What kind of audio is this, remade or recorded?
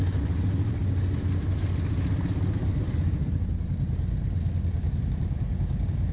recorded